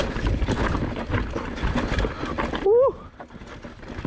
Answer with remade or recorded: recorded